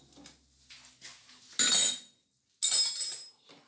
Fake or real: real